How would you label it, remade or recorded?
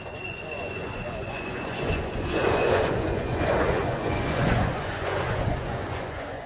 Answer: remade